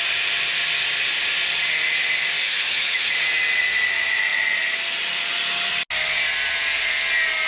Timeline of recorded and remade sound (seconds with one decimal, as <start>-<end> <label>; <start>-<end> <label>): 0.0-2.4 recorded; 2.4-3.1 remade; 3.1-7.5 recorded